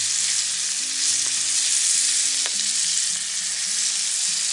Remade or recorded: recorded